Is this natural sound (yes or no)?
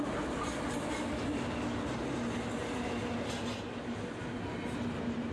yes